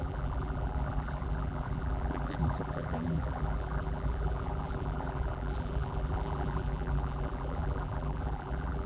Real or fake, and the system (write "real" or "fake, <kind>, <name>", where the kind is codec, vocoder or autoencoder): fake, vocoder, BigVGAN v2